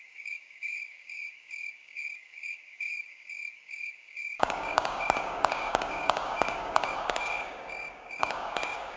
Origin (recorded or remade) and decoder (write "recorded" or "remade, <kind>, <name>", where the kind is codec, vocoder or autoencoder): remade, codec, DAC